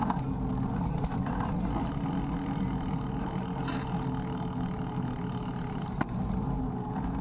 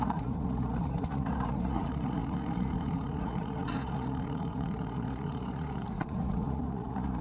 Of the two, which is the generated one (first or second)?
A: second